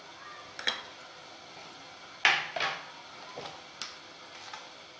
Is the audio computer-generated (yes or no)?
no